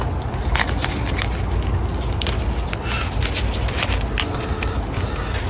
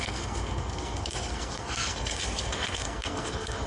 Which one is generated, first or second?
second